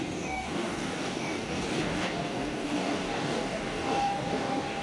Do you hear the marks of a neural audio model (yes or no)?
yes